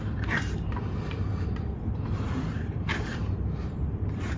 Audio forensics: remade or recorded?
remade